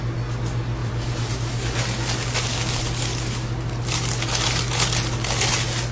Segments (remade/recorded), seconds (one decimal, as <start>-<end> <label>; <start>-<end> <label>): 0.0-0.8 recorded; 0.8-1.3 remade; 1.3-5.9 recorded

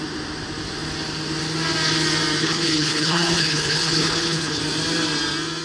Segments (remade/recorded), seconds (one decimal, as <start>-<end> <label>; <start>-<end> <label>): 0.0-2.4 recorded; 2.4-4.6 remade; 4.6-5.6 recorded

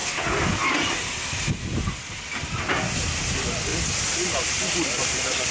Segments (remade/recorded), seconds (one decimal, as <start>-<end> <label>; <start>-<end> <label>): 0.0-3.7 recorded; 3.7-5.5 remade

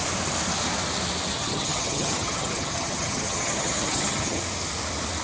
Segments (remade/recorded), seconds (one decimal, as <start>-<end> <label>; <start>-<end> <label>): 0.0-1.3 recorded; 1.3-4.4 remade; 4.4-5.2 recorded